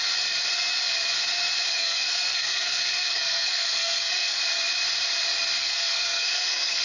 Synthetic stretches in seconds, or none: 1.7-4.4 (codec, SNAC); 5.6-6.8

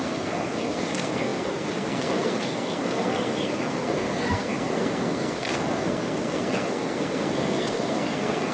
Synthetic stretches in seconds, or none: 0.0-8.5 (codec, SNAC)